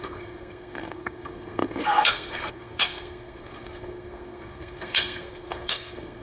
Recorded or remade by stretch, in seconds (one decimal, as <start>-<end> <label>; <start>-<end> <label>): 0.0-6.2 remade